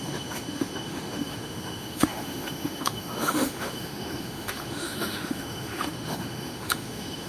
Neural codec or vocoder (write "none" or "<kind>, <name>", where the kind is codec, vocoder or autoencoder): autoencoder, DAC-VAE